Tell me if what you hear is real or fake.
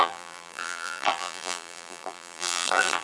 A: fake